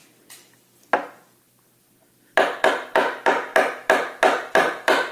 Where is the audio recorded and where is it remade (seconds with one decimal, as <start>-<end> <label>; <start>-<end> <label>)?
0.0-2.7 recorded; 2.7-3.5 remade; 3.5-4.5 recorded; 4.5-5.1 remade